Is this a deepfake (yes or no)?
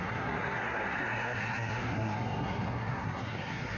yes